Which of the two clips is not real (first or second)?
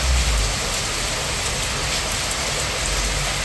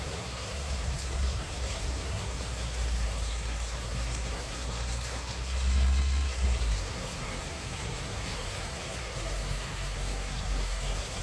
second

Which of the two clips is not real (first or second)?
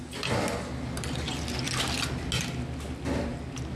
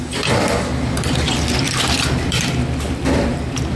second